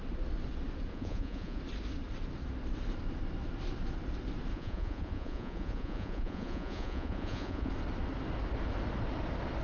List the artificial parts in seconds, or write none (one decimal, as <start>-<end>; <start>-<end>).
0.9-1.6; 4.5-7.7